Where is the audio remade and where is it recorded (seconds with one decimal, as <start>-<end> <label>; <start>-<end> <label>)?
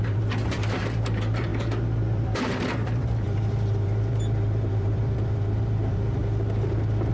0.0-6.2 remade; 6.2-7.1 recorded